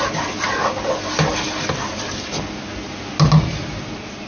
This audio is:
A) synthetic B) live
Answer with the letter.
B